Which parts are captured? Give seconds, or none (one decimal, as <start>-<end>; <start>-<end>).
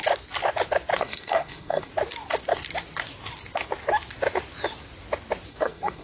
0.0-1.0; 1.9-5.5